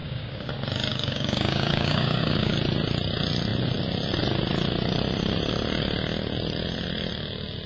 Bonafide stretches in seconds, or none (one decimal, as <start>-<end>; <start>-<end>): 0.5-0.9; 2.5-7.7